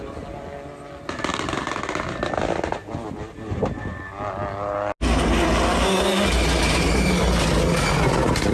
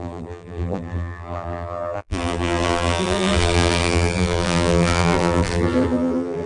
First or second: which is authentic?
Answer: first